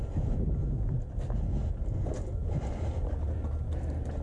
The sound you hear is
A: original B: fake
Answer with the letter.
A